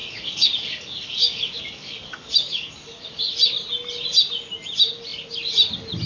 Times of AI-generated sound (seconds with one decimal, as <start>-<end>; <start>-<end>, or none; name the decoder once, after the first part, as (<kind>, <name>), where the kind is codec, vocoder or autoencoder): 0.0-3.2 (codec, DAC)

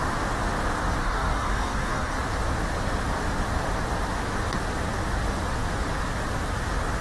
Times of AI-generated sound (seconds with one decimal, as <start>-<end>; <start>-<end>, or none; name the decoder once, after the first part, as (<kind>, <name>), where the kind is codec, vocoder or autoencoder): 1.0-2.1 (codec, DAC)

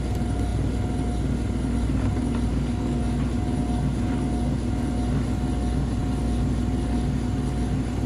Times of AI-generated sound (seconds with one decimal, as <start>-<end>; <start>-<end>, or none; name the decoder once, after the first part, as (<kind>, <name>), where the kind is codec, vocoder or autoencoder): 2.5-3.0 (codec, DAC)

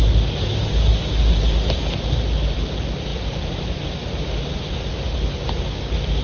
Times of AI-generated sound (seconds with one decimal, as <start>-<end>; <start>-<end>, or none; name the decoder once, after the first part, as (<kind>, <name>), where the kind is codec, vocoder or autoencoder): none

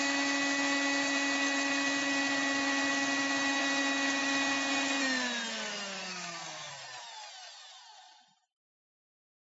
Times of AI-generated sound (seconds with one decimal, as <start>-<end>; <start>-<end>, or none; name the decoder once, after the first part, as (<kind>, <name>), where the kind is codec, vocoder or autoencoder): 6.0-6.7 (codec, DAC)

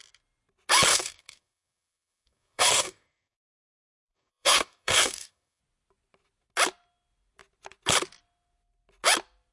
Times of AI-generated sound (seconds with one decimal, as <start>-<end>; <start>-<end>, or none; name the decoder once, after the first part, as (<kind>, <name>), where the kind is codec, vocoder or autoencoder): 0.9-5.6 (codec, DAC)